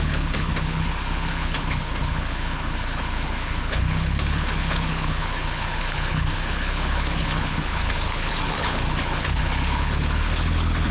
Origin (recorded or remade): remade